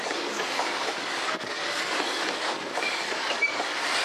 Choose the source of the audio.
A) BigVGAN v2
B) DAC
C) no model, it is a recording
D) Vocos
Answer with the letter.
B